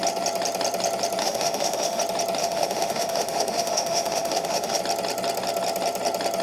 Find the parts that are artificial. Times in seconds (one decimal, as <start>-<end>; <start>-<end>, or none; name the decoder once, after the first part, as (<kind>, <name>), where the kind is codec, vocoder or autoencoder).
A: 1.2-2.0 (autoencoder, DAC-VAE); 2.4-4.8

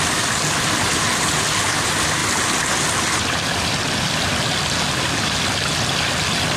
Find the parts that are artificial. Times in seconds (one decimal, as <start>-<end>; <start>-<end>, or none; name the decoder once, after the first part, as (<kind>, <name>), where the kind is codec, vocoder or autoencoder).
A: none

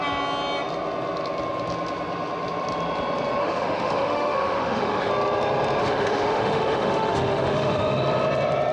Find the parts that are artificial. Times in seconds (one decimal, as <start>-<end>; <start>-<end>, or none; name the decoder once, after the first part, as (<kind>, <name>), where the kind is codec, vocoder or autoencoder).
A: 3.4-5.1 (autoencoder, DAC-VAE); 5.8-8.0

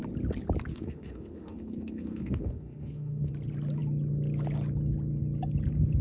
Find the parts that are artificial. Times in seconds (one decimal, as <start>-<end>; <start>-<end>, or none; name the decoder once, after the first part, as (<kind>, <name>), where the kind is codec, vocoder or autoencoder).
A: 0.7-3.3 (autoencoder, DAC-VAE)

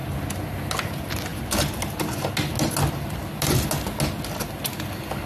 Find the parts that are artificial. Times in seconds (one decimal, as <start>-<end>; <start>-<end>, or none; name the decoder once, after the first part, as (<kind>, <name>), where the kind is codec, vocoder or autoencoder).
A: none

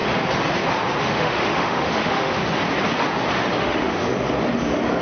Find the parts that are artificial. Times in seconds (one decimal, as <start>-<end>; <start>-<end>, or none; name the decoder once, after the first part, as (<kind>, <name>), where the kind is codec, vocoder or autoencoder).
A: 1.0-2.4 (autoencoder, DAC-VAE); 3.6-4.1

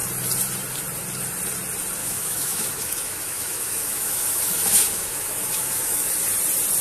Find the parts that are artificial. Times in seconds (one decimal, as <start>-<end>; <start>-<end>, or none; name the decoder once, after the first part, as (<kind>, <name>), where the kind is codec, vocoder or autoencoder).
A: 2.0-6.1 (autoencoder, DAC-VAE)